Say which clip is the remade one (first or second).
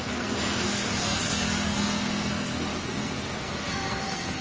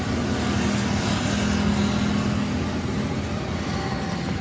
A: first